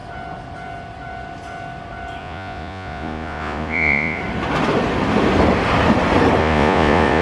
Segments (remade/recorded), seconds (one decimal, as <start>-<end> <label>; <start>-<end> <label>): 0.0-2.2 recorded; 2.2-4.2 remade; 4.2-6.4 recorded; 6.4-7.2 remade